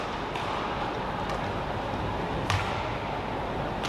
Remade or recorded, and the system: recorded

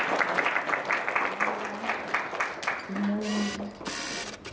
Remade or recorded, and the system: recorded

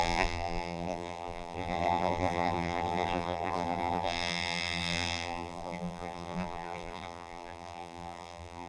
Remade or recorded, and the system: remade, vocoder, BigVGAN v2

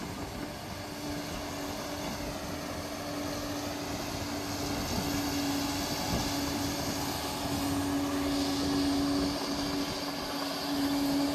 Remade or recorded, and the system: recorded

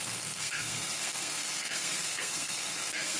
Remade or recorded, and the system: remade, codec, SNAC